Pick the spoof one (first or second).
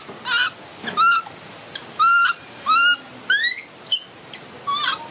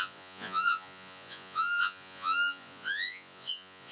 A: second